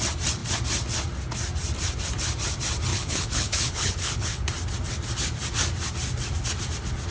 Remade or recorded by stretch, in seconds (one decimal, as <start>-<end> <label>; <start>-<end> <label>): 0.0-2.9 recorded; 2.9-4.5 remade; 4.5-7.1 recorded